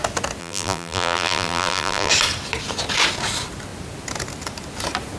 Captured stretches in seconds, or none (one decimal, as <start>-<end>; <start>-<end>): 0.0-0.4; 2.1-5.2